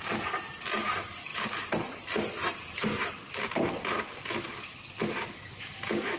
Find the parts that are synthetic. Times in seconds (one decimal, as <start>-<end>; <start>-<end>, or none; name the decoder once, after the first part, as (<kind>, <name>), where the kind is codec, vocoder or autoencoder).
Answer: none